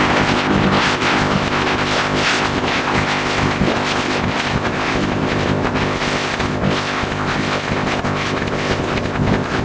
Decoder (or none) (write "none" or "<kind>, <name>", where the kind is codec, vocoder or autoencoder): codec, ZipCodec